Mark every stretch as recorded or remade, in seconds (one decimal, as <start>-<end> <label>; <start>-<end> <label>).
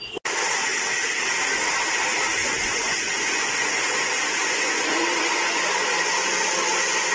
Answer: 0.0-2.4 recorded; 2.4-7.1 remade